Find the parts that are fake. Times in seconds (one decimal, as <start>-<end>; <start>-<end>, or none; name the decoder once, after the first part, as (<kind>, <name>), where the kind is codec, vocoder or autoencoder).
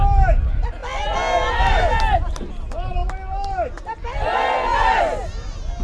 none